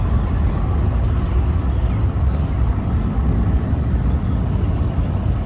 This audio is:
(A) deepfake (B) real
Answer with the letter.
B